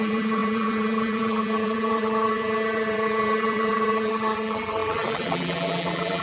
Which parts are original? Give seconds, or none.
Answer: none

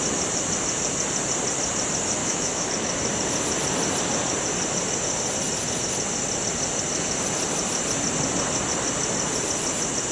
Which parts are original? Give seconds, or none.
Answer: 0.0-2.2; 2.7-10.1

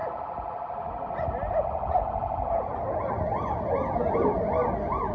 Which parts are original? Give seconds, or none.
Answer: 0.0-5.1

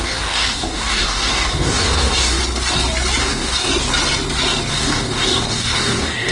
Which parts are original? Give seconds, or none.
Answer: 2.4-3.2; 3.7-4.7

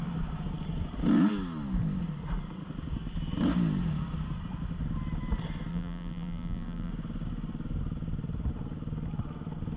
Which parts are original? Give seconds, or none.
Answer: 0.0-5.7; 6.9-9.8

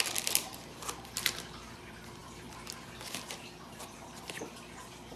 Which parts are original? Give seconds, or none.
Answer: none

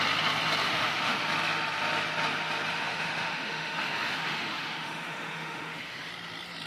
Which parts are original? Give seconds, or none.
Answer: 0.0-0.6; 1.2-2.8; 6.1-6.7

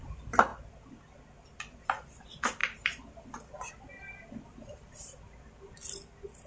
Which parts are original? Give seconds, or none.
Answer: 0.5-1.8